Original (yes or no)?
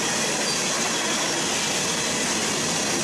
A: yes